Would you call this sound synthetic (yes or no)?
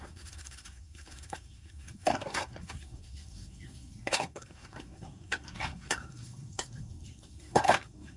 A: yes